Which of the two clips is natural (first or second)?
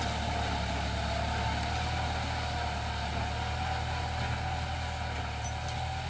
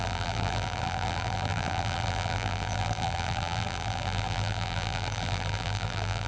first